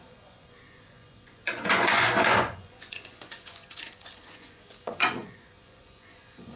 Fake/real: fake